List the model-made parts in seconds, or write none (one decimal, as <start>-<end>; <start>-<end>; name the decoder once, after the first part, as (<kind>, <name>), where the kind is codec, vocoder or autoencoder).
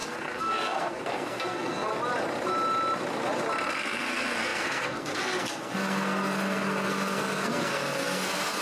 0.0-1.9 (codec, SNAC); 3.7-8.6